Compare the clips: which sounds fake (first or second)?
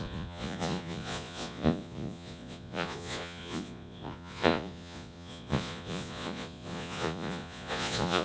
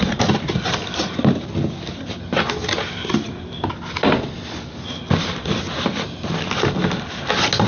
first